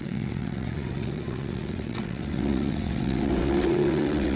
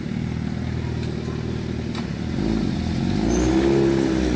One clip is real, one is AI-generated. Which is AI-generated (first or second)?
first